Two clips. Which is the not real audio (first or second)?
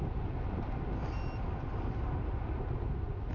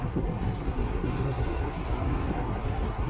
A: second